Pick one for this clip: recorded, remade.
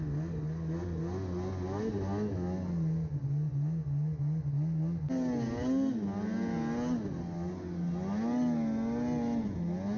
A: recorded